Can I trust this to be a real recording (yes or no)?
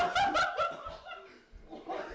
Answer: yes